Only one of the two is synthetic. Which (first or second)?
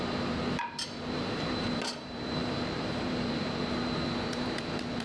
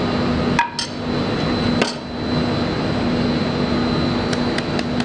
first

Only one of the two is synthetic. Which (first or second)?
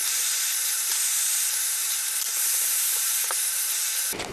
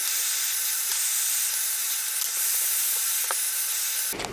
first